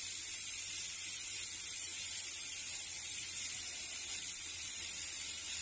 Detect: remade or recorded remade